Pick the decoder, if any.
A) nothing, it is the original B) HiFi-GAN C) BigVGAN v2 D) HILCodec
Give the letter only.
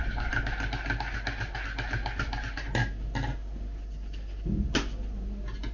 A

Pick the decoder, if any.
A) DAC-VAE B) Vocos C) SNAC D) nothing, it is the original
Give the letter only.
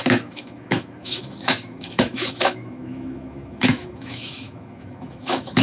A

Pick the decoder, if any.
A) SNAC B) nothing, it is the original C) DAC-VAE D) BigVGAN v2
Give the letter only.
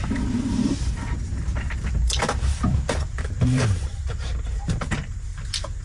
D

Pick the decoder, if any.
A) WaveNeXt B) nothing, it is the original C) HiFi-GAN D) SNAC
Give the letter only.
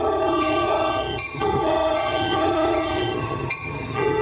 C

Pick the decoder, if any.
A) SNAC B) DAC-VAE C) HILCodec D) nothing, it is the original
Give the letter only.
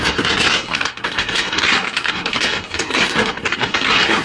A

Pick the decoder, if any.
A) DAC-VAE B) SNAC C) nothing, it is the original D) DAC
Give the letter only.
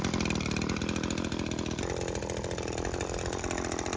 C